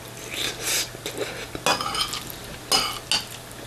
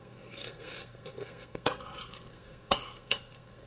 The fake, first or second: second